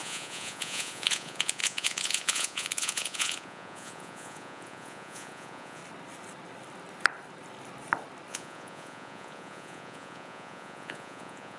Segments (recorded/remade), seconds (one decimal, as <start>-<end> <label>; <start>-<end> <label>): 0.0-5.8 remade; 5.8-8.3 recorded; 8.3-11.6 remade